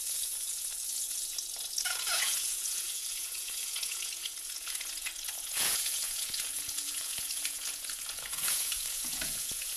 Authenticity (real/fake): fake